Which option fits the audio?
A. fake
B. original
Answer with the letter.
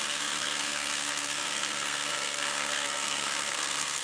A